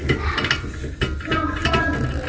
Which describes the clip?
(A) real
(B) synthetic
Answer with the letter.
A